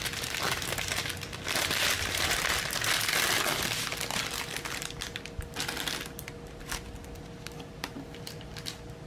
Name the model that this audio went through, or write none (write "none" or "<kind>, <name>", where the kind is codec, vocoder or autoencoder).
vocoder, BigVGAN v2